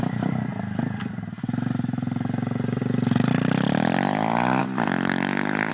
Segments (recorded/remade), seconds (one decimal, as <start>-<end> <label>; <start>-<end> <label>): 0.0-5.7 recorded